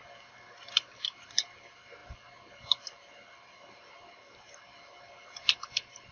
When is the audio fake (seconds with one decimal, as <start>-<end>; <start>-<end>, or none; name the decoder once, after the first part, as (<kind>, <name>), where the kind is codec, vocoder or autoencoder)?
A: none

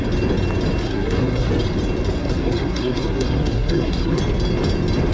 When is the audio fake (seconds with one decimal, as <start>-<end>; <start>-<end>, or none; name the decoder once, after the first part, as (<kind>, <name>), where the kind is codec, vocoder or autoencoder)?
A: 0.8-1.5 (codec, SNAC); 2.2-4.2

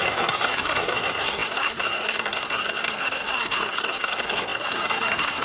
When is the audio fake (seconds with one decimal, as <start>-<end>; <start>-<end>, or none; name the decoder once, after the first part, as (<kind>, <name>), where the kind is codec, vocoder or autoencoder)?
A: 0.0-5.4 (codec, SNAC)

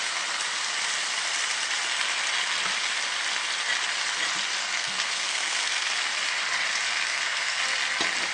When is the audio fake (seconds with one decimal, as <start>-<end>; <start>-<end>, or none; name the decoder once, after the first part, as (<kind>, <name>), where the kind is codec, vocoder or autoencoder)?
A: 4.6-5.9 (codec, SNAC); 7.1-7.6

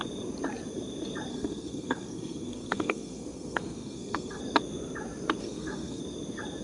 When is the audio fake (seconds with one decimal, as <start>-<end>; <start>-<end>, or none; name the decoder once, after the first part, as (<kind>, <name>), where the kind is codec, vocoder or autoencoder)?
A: 1.3-4.4 (codec, SNAC); 5.4-6.0

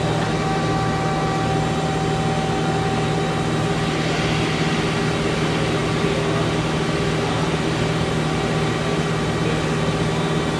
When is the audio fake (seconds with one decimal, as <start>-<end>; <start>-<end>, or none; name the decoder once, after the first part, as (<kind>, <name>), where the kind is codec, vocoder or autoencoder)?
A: none

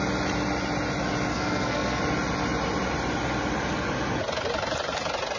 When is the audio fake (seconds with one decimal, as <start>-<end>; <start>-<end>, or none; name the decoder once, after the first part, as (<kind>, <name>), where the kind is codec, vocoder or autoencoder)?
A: 1.3-2.0 (codec, SNAC)

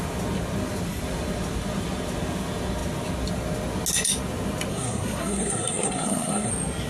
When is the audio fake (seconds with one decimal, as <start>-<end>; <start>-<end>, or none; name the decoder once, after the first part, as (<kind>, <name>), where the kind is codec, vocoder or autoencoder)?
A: 4.7-6.5 (codec, SNAC)